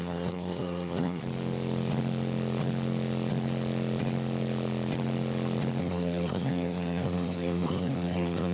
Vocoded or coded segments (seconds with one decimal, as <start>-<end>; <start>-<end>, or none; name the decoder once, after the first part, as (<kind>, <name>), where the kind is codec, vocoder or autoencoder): 0.0-1.2 (codec, SNAC); 5.8-8.5